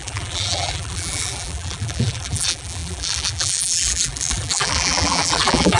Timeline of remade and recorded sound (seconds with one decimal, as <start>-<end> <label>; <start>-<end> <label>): 0.0-5.8 remade